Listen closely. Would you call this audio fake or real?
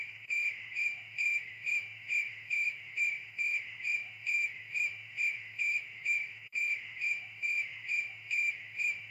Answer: fake